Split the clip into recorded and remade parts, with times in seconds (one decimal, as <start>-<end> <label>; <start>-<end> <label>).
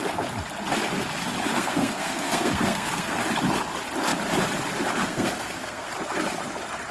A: 0.0-1.5 recorded; 1.5-3.2 remade; 3.2-5.0 recorded; 5.0-5.9 remade; 5.9-6.9 recorded